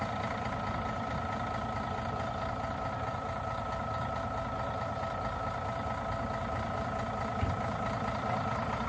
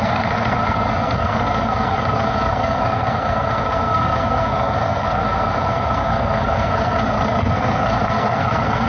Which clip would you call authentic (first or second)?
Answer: first